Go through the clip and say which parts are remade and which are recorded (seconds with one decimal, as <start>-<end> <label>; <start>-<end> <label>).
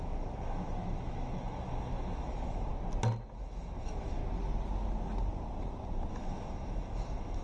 0.0-2.7 remade; 2.7-3.4 recorded; 3.4-4.2 remade; 4.2-6.1 recorded; 6.1-7.4 remade